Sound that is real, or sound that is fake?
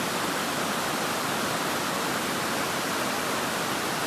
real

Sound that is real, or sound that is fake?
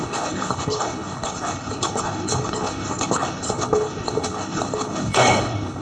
fake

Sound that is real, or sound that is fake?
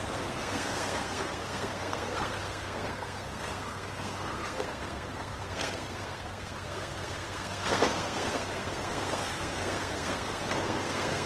fake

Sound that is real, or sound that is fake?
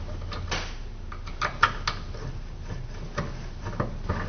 real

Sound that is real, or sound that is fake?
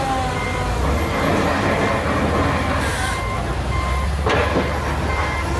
real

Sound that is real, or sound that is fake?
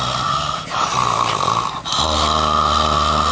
real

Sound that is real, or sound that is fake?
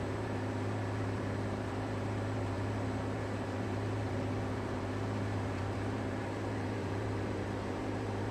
fake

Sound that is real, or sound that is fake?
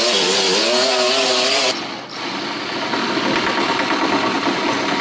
real